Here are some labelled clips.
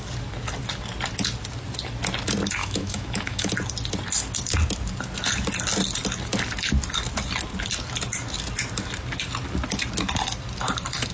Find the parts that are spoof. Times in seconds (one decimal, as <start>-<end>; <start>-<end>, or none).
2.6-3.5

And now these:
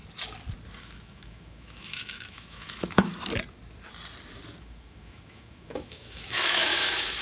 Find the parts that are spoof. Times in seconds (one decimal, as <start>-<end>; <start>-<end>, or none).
0.8-3.1; 4.6-7.2

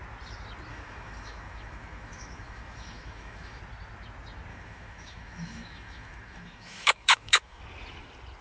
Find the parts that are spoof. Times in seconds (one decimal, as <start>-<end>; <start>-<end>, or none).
0.7-3.6; 4.5-7.6